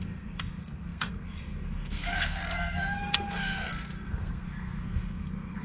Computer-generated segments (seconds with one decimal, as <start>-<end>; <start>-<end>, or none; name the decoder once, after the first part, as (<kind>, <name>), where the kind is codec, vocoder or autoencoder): 0.0-5.6 (codec, SNAC)